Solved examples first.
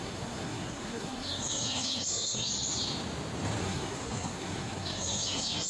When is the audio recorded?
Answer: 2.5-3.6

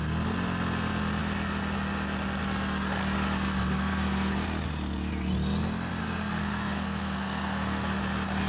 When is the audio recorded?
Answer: 0.0-3.7; 4.3-6.0; 8.0-8.5

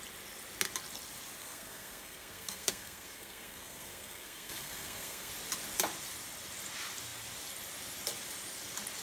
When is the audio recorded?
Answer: 0.0-1.4; 5.3-9.0

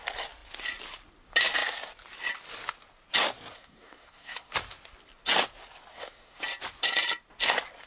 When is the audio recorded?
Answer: 0.0-3.5; 4.5-5.9; 6.4-7.9